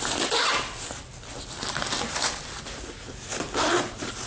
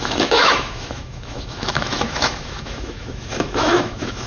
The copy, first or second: second